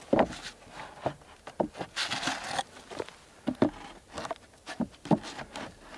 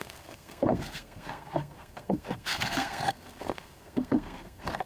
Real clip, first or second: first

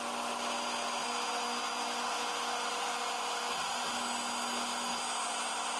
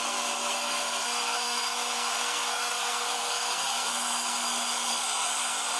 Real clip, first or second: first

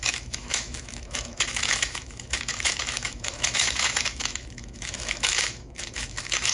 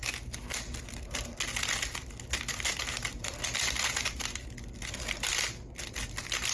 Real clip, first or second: second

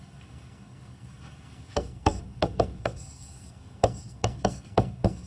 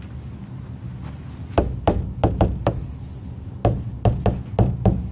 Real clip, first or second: second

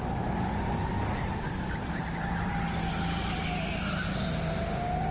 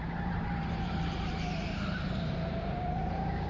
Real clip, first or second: first